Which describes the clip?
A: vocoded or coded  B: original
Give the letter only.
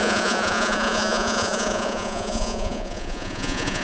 A